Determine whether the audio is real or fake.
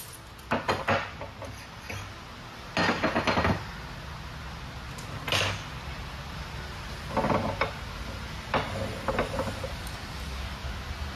real